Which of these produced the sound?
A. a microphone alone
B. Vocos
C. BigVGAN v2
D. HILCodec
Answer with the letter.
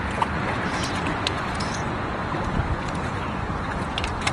B